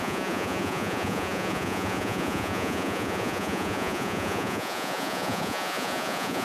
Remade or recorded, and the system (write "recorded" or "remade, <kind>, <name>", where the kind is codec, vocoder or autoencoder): remade, vocoder, Vocos